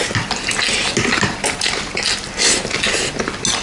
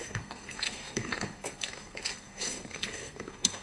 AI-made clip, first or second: second